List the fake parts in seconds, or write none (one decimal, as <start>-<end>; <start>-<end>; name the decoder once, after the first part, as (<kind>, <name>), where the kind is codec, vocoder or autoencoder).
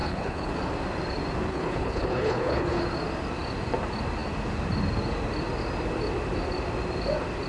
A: 0.0-0.5 (codec, HILCodec); 1.5-2.8